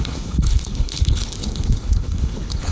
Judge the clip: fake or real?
fake